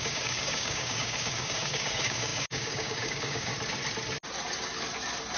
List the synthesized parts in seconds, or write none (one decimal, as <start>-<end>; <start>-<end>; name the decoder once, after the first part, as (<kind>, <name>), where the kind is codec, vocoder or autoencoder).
0.0-3.5 (codec, DAC)